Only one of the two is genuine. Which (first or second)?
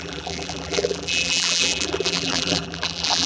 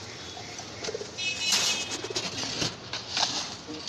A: second